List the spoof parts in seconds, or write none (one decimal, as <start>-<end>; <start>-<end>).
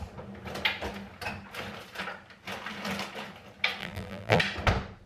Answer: 3.8-4.4